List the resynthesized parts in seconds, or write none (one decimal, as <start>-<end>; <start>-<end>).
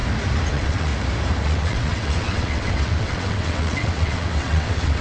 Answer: 0.5-0.9; 1.4-5.0